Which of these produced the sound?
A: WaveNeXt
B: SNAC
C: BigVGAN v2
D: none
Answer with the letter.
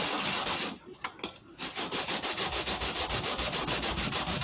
D